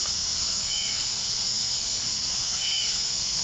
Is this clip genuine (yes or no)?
no